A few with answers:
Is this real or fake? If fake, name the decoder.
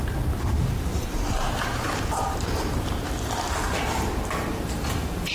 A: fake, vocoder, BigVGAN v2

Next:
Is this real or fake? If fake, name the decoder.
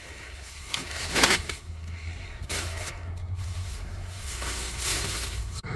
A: fake, codec, SNAC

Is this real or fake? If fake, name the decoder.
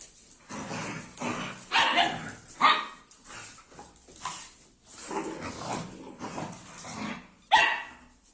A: real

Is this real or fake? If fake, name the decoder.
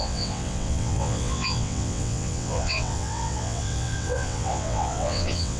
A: fake, vocoder, WaveNeXt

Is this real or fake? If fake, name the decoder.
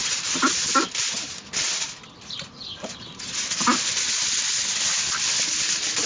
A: real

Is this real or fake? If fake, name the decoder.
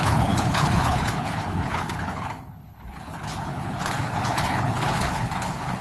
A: fake, codec, HILCodec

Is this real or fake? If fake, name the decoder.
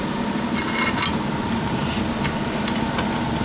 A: real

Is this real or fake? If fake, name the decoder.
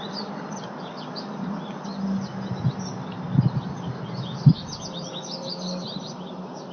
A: real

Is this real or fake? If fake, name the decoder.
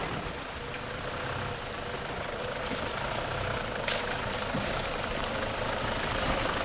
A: fake, vocoder, BigVGAN v2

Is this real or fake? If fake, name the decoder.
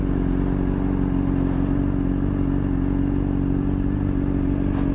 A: real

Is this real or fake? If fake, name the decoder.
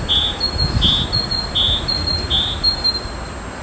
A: real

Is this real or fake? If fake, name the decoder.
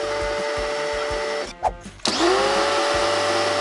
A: real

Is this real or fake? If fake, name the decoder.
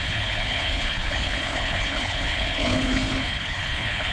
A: fake, codec, HILCodec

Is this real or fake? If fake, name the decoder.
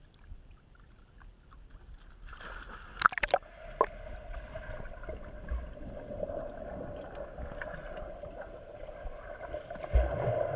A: real